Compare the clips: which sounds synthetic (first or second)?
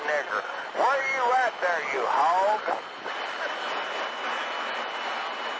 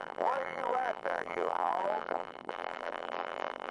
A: second